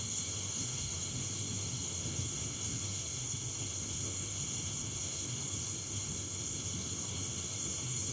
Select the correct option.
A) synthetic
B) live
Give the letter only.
A